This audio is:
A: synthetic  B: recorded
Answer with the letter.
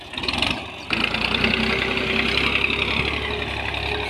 B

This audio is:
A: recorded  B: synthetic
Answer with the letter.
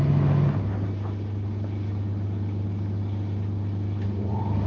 A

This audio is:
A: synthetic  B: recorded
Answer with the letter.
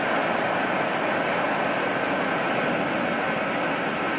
B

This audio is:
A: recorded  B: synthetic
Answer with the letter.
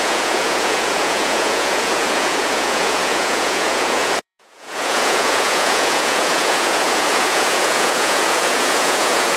B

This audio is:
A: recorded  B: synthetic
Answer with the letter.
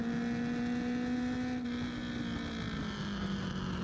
A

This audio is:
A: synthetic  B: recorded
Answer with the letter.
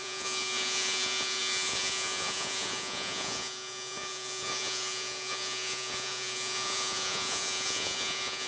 A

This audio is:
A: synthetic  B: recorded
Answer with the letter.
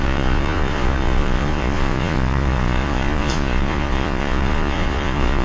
A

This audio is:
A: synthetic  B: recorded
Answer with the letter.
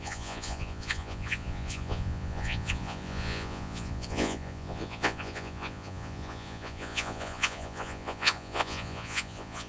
A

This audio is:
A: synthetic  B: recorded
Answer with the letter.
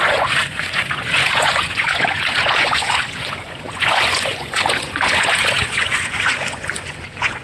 A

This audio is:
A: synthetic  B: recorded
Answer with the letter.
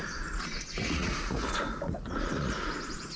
A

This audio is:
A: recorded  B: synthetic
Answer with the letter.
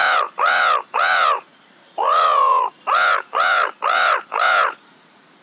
B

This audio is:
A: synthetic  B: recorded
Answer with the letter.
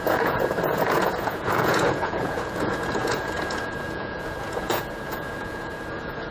A